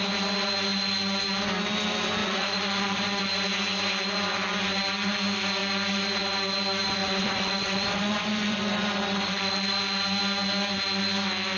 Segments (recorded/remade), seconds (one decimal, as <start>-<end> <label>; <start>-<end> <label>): 0.0-2.2 recorded; 2.2-3.2 remade; 3.2-7.0 recorded; 7.0-9.5 remade; 9.5-11.6 recorded